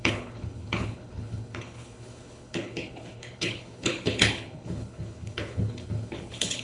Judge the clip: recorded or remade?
remade